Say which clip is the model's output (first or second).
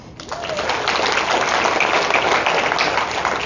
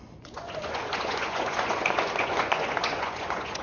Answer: second